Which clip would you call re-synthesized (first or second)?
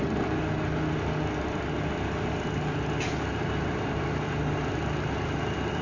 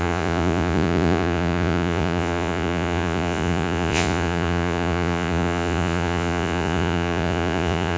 second